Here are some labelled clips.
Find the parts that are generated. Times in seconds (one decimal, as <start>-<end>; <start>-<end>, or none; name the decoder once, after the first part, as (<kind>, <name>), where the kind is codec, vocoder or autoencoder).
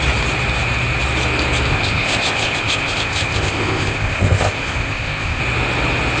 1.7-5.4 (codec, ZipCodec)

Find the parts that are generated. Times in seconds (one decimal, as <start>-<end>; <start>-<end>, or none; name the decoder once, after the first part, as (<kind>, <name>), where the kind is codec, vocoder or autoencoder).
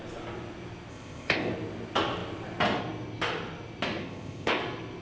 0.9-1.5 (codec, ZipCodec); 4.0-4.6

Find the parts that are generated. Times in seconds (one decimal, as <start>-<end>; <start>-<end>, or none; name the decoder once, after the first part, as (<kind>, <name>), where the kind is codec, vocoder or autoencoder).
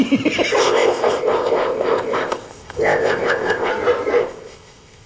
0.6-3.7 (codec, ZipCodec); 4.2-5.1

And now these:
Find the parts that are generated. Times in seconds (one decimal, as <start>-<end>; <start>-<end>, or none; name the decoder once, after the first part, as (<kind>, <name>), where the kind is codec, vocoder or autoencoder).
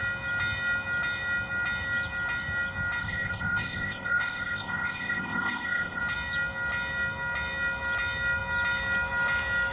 3.0-6.0 (codec, ZipCodec)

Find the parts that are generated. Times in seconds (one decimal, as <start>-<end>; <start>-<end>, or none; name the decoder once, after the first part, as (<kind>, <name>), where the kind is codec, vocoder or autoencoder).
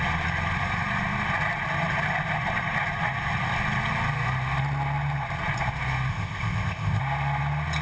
6.1-7.0 (codec, ZipCodec)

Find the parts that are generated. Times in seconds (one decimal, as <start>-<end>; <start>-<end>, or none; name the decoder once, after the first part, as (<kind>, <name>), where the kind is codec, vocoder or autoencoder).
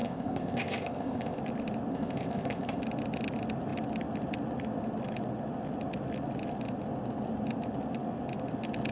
0.0-1.4 (codec, ZipCodec); 1.9-2.8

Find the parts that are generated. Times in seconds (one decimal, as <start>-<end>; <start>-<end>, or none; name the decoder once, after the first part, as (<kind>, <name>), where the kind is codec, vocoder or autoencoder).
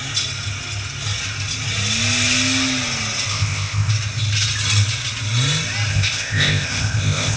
3.3-3.9 (codec, ZipCodec); 5.9-7.4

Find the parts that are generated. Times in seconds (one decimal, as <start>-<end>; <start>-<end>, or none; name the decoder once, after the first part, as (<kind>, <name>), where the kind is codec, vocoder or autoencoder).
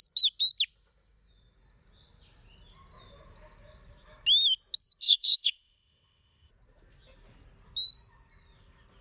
5.0-6.5 (codec, ZipCodec)